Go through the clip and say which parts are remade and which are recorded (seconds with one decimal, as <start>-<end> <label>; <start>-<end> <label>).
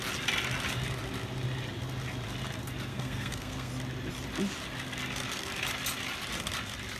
0.0-2.9 recorded; 2.9-3.7 remade; 3.7-7.0 recorded